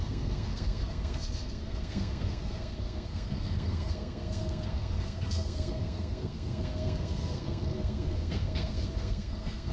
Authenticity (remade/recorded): remade